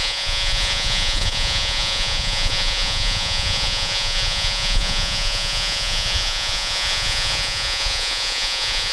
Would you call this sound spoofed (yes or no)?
yes